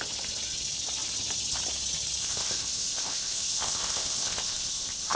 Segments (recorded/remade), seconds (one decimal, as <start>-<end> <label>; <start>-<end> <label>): 0.0-2.2 recorded; 2.2-5.1 remade